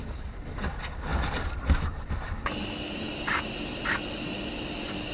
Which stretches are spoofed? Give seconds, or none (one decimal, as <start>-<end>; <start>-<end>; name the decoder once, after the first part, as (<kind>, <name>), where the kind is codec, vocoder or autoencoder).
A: 1.1-1.7 (vocoder, BigVGAN v2)